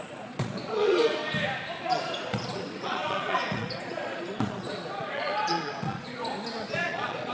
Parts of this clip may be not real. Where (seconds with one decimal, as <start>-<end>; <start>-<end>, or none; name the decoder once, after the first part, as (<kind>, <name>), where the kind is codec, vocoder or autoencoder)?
0.0-1.2 (vocoder, Vocos); 1.8-6.2; 6.7-7.3